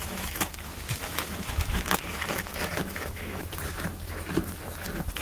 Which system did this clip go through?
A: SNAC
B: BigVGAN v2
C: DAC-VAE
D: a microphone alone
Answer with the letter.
C